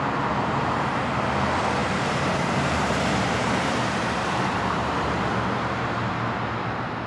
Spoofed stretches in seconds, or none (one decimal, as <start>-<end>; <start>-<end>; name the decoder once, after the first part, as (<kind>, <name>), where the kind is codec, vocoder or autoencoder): 1.8-6.1 (vocoder, BigVGAN v2)